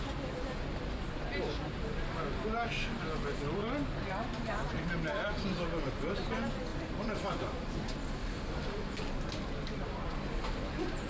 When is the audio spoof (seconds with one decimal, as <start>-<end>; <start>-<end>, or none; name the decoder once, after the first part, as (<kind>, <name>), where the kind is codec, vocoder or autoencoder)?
6.7-8.0 (vocoder, BigVGAN v2)